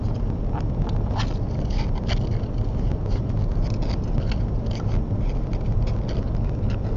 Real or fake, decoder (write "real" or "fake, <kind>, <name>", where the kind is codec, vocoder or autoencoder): real